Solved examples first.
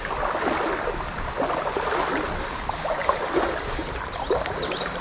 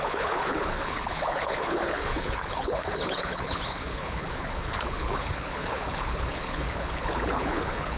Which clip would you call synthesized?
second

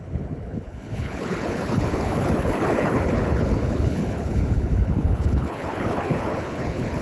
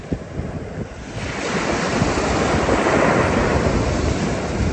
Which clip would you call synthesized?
first